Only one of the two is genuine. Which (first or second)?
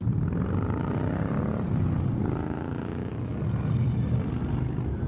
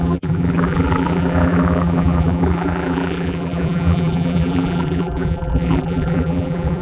first